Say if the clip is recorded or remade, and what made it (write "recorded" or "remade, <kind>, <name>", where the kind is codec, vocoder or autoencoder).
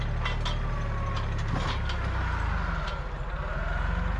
recorded